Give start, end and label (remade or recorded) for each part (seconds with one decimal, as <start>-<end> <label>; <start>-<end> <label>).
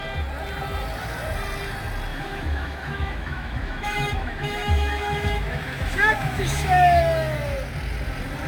0.0-2.1 recorded; 2.1-7.0 remade; 7.0-8.5 recorded